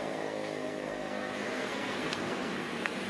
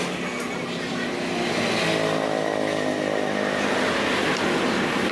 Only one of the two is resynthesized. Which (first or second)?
first